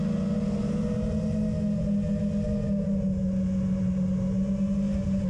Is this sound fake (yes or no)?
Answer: no